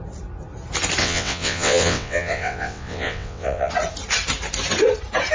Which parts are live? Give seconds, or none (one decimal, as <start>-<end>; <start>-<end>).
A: 0.0-1.0; 3.7-5.3